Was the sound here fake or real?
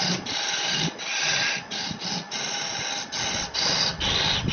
real